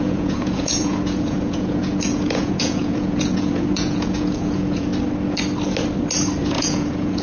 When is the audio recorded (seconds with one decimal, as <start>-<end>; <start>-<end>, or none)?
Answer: 4.9-6.4